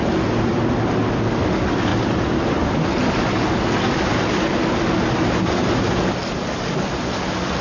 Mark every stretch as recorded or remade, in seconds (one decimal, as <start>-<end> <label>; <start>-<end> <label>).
0.0-0.5 recorded; 0.5-1.3 remade; 1.3-1.9 recorded; 1.9-2.5 remade; 2.5-7.6 recorded